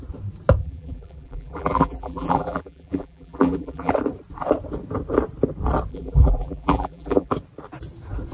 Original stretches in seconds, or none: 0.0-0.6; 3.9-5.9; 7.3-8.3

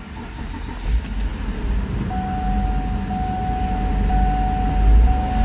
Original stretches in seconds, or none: 0.0-5.4

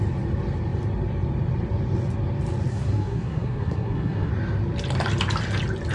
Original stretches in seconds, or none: 0.0-2.7; 4.3-5.9

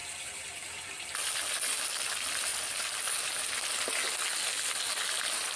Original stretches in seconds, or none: 0.0-5.6